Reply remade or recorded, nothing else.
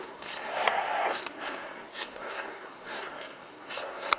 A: remade